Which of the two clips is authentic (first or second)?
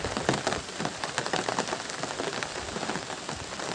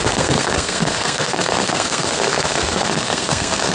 first